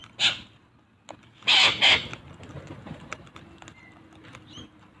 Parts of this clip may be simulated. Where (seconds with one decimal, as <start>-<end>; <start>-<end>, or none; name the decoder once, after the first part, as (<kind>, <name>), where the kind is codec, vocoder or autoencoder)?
none